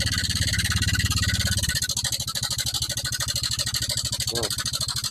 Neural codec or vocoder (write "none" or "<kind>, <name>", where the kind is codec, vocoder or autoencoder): none